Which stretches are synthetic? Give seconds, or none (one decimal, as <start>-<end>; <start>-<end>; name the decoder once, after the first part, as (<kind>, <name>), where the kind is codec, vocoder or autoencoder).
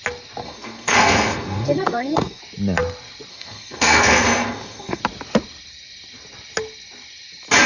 0.4-2.4 (codec, SNAC); 3.3-5.0